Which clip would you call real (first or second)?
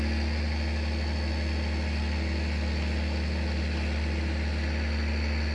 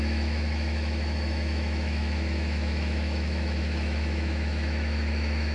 first